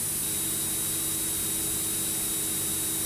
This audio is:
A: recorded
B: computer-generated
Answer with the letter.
A